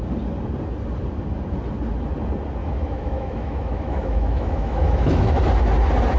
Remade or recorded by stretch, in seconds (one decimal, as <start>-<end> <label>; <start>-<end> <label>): 0.0-2.6 recorded; 2.6-5.4 remade; 5.4-6.2 recorded